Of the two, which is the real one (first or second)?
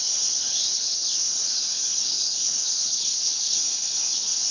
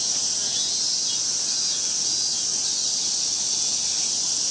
second